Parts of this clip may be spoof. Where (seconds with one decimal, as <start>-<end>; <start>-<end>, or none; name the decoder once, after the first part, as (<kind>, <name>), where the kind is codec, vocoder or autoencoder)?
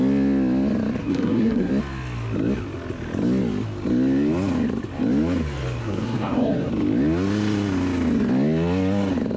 1.0-1.7 (codec, SNAC); 5.8-6.7